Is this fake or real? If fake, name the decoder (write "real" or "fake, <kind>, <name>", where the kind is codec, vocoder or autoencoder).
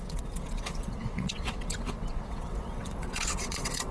fake, vocoder, WaveNeXt